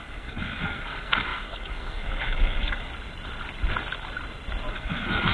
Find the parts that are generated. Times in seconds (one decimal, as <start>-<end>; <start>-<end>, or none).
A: 0.0-2.9; 4.7-5.3